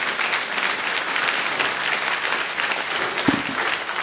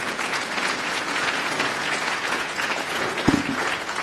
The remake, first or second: second